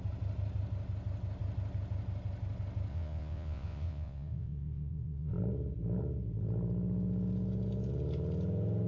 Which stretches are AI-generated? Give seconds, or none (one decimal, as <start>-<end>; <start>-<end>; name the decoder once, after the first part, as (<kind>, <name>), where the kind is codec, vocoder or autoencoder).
2.9-5.3 (vocoder, Vocos)